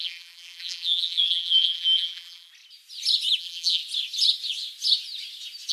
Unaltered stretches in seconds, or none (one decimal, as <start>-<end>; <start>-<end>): 2.5-3.4; 3.8-5.7